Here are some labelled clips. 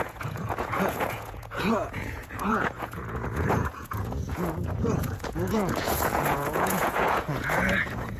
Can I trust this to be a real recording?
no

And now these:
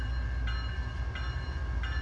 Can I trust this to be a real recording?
yes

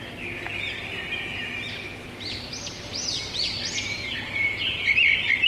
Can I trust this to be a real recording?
no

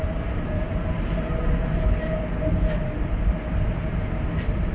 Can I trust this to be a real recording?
yes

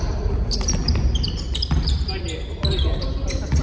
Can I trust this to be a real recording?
yes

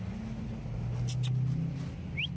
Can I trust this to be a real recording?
yes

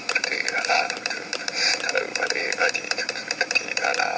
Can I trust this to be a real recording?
no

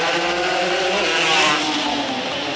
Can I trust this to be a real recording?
yes